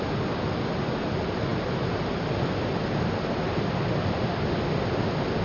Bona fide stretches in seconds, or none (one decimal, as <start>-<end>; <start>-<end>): 0.0-5.4